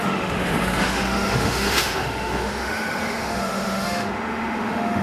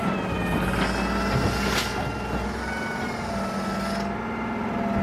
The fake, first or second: first